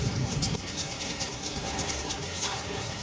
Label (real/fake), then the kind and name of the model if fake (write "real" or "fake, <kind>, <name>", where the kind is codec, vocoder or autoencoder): fake, codec, SNAC